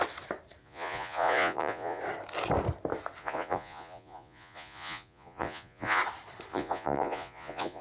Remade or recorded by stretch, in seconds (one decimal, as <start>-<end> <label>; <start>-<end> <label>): 0.0-0.6 recorded; 0.6-2.0 remade; 2.0-3.2 recorded; 3.2-6.0 remade; 6.0-6.5 recorded; 6.5-7.8 remade